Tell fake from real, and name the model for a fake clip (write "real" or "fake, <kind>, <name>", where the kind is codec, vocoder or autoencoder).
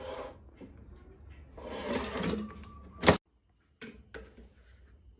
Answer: real